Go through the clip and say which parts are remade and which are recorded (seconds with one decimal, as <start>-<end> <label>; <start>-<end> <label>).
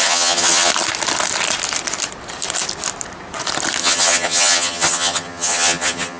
0.0-0.7 remade; 0.7-3.8 recorded; 3.8-6.2 remade